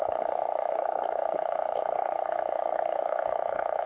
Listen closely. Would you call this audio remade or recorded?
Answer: remade